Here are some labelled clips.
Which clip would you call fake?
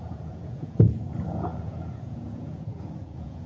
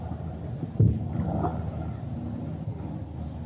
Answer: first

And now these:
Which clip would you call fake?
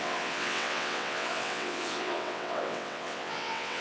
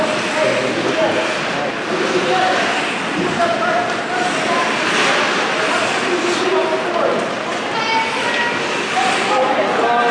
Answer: first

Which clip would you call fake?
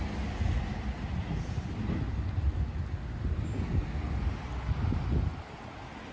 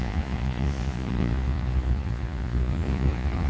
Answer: second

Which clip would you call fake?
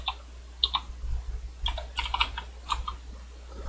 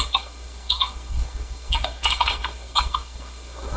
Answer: second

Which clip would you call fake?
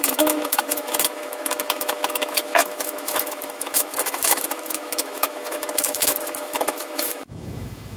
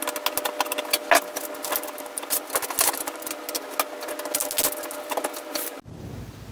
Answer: first